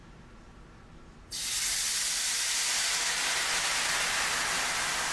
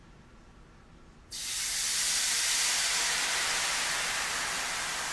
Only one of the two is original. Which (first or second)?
first